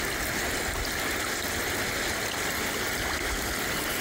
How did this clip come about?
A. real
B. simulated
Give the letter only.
A